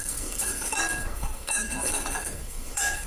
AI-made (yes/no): yes